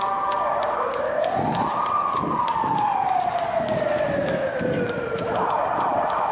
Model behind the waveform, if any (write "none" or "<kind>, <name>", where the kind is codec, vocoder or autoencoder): none